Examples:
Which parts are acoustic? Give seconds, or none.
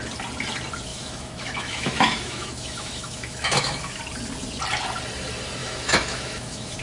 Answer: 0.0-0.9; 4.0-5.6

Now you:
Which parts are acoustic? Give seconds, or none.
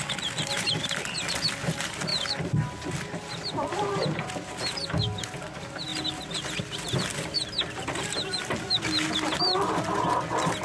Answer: 0.0-10.6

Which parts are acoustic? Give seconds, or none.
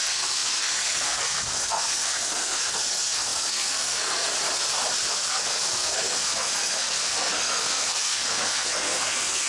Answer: 4.3-5.1